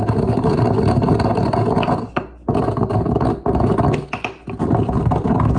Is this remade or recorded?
recorded